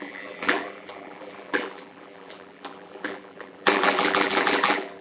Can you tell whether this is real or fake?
fake